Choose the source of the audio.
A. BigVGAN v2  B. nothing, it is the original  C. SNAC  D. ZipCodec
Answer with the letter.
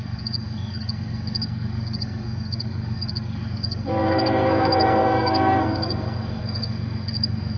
C